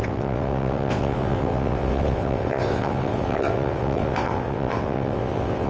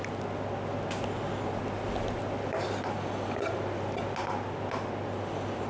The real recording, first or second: second